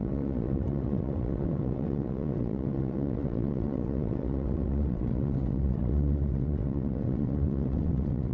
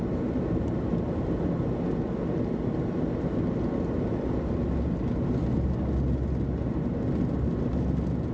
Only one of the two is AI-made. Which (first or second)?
first